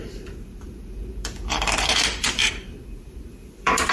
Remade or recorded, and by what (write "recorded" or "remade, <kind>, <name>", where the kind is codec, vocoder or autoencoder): remade, vocoder, BigVGAN v2